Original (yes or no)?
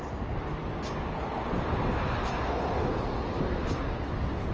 yes